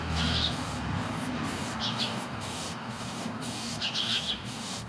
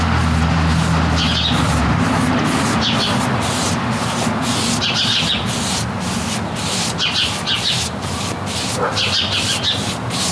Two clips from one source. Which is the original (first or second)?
second